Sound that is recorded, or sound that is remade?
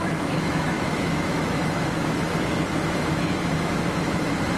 remade